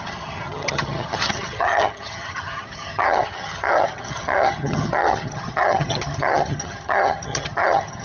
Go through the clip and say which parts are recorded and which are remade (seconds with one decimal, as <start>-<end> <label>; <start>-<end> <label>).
0.0-8.0 remade